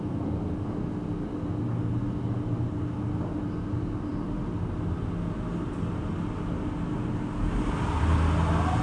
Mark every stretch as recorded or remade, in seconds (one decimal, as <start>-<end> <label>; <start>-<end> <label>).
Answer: 0.0-8.8 recorded

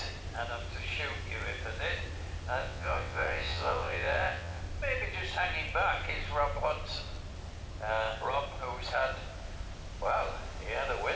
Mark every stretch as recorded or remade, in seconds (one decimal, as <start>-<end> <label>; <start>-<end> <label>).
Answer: 0.0-2.6 recorded; 2.6-4.6 remade; 4.6-11.2 recorded

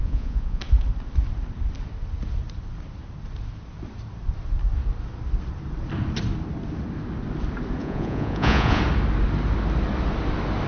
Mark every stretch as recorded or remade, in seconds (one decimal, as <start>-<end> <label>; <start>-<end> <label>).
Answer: 0.0-0.6 remade; 0.6-7.8 recorded; 7.8-8.8 remade; 8.8-10.7 recorded

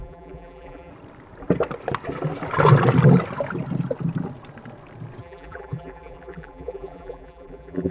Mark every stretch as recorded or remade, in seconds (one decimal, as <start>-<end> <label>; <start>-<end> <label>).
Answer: 0.0-0.9 remade; 0.9-5.2 recorded; 5.2-7.9 remade